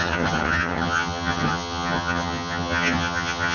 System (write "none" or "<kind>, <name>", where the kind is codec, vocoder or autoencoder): vocoder, HiFi-GAN